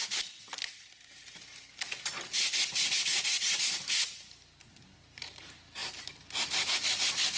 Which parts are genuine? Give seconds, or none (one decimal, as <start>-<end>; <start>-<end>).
0.0-7.4